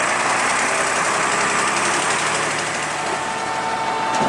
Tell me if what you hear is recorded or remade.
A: recorded